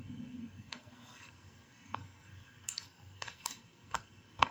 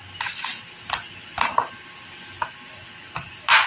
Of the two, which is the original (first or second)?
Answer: second